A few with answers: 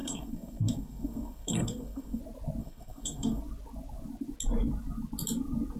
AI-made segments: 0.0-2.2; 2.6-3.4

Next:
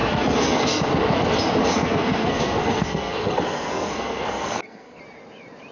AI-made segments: 0.0-0.8; 1.6-5.0

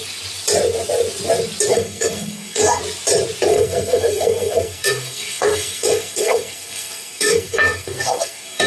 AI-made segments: 1.7-2.8; 3.5-8.7

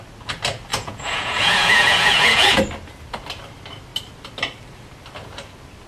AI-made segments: 0.7-2.6

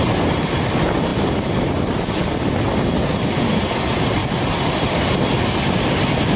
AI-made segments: none

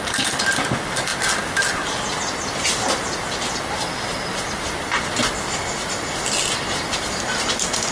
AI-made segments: none

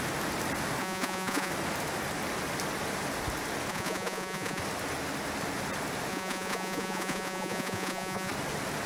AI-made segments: 0.8-1.5; 3.7-4.6; 6.1-8.3